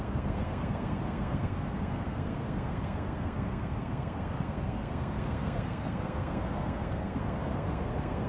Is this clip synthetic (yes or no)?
yes